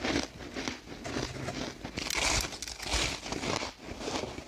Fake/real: real